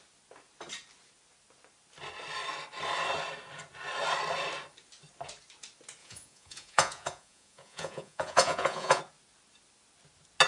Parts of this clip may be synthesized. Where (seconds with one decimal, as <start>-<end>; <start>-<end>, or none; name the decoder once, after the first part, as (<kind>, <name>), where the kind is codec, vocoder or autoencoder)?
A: 6.0-9.0 (vocoder, Vocos)